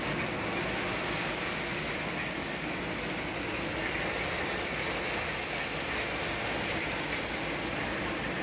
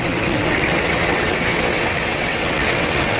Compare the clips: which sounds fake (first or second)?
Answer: second